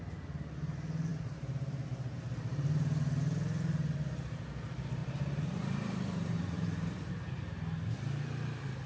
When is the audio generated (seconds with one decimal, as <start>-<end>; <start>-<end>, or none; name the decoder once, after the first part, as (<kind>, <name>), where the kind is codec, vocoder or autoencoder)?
1.1-2.2 (vocoder, BigVGAN v2); 5.0-7.1